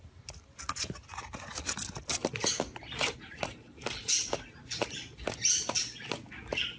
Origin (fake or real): real